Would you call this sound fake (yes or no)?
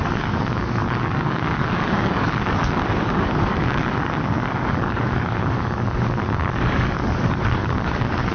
yes